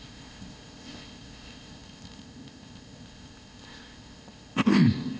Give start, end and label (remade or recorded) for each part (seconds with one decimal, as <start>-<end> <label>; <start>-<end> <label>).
0.0-5.2 remade